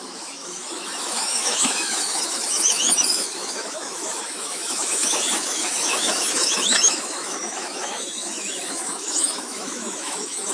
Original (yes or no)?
no